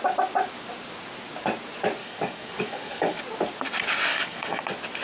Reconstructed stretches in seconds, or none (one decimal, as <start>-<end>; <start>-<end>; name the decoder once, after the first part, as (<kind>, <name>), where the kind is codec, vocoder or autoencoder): 2.0-3.2 (codec, DAC); 4.1-4.6